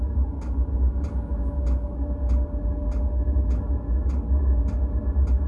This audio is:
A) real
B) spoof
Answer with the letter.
A